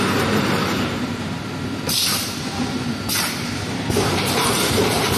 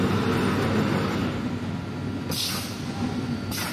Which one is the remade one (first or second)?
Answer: first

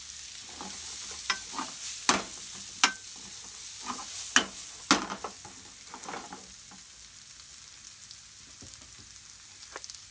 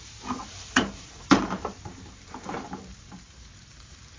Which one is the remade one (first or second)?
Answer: second